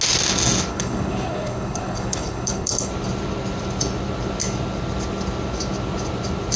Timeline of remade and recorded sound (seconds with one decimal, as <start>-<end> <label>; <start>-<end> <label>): 0.0-0.7 recorded; 0.7-2.9 remade; 2.9-6.6 recorded